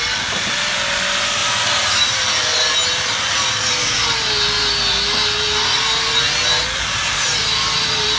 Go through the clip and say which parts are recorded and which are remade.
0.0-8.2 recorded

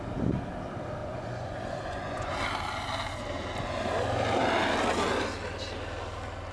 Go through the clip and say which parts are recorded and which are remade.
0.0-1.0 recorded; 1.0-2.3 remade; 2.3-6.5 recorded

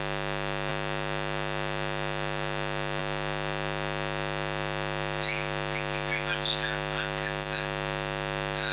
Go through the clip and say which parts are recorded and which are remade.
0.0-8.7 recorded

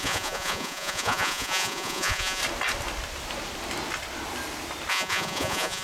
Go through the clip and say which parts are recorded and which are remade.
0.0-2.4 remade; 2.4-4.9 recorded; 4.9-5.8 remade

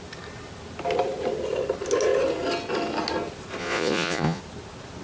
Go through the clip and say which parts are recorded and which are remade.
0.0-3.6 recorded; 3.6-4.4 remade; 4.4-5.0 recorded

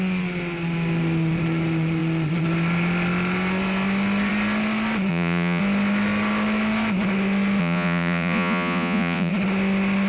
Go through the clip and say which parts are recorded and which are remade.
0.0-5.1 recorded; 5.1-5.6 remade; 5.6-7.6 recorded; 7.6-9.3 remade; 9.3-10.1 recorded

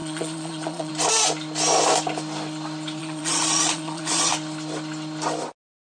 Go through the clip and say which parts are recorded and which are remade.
0.0-0.9 remade; 0.9-3.0 recorded; 3.0-4.3 remade; 4.3-5.8 recorded

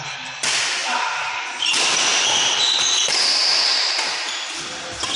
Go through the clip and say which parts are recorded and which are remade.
0.0-5.2 recorded